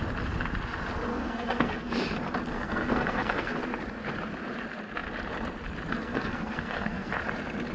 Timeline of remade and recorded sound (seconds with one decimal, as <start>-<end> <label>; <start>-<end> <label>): 0.0-1.1 recorded; 1.1-1.9 remade; 1.9-2.5 recorded; 2.5-3.6 remade; 3.6-5.9 recorded; 5.9-7.1 remade; 7.1-7.7 recorded